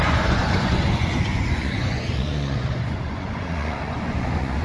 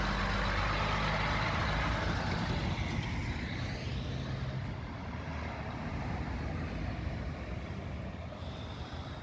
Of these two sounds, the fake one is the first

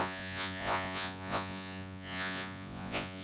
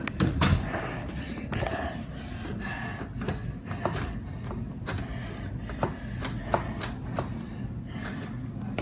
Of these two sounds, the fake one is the first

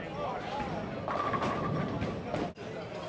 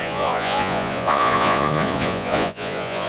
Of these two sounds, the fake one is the second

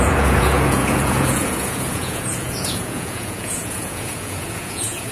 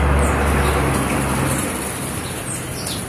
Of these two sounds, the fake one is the first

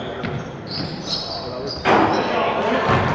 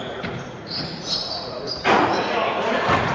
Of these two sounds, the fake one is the second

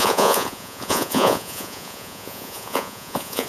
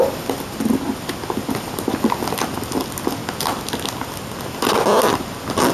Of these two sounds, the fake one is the first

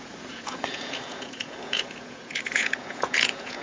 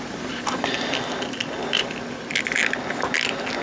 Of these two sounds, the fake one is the first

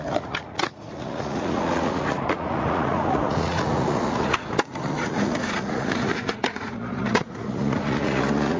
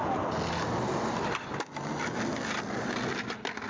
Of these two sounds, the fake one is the first